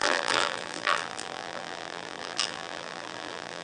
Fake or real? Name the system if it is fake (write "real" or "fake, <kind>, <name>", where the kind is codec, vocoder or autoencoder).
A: fake, vocoder, BigVGAN v2